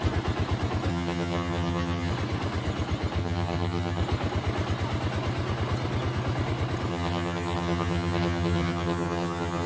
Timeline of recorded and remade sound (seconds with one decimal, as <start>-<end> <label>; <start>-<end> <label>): 0.0-0.9 recorded; 0.9-2.1 remade; 2.1-3.2 recorded; 3.2-4.0 remade; 4.0-6.9 recorded; 6.9-9.7 remade